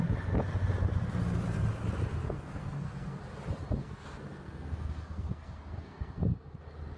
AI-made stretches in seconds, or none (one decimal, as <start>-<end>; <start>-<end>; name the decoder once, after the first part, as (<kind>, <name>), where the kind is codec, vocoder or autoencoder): 2.2-3.2 (codec, SNAC); 3.8-6.2